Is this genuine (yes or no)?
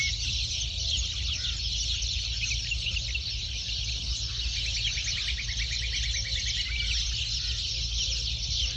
yes